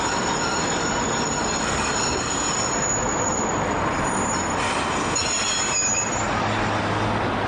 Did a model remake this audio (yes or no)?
no